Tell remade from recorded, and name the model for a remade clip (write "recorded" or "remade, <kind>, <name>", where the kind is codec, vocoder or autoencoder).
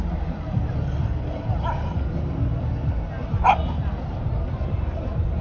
remade, vocoder, BigVGAN v2